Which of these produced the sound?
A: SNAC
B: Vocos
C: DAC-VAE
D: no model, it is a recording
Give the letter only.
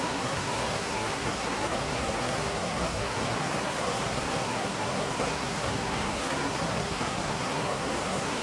A